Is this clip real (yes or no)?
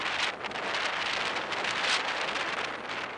yes